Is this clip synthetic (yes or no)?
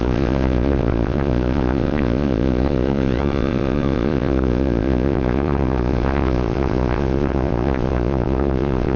yes